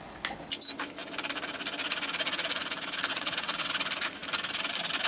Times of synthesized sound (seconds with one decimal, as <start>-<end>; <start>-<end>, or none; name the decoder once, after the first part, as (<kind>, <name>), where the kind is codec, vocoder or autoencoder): 3.1-3.7 (vocoder, WaveNeXt)